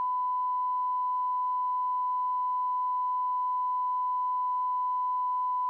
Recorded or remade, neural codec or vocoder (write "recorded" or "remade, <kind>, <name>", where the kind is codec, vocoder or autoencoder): recorded